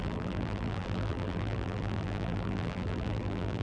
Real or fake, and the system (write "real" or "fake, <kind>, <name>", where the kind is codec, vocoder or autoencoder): fake, vocoder, BigVGAN v2